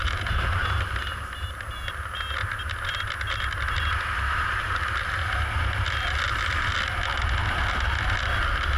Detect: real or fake real